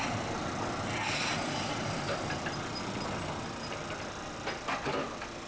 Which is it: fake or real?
real